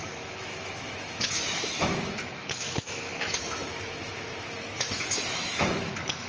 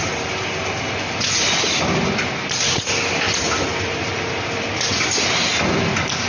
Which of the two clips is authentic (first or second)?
second